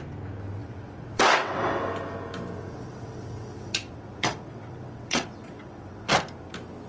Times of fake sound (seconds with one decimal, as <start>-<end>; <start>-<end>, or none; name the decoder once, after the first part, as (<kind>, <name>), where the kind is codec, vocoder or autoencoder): 0.6-1.8 (vocoder, WaveNeXt); 2.6-6.1